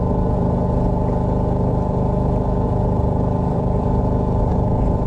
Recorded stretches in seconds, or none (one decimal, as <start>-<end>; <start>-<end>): 0.0-1.7; 4.0-5.1